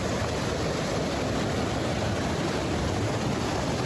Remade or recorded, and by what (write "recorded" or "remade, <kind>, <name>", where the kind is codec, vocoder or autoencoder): recorded